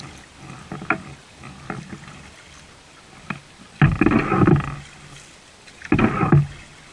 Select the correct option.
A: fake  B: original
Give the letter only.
B